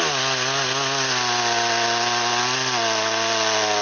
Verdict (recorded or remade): recorded